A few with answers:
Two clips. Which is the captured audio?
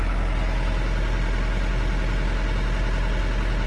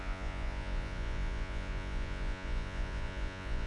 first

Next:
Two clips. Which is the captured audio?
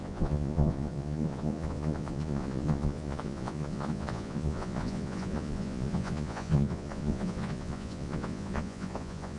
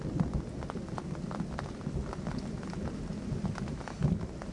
second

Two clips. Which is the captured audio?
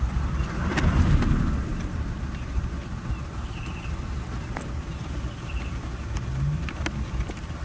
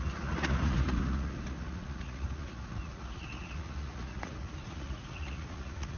first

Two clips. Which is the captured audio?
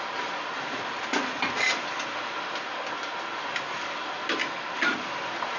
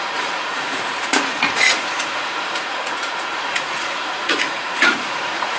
first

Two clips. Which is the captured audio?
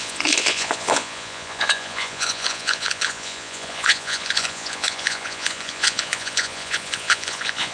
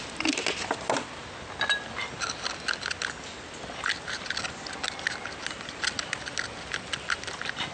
second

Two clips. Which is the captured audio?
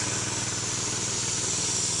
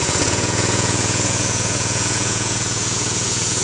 first